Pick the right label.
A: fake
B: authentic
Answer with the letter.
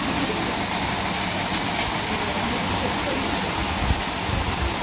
B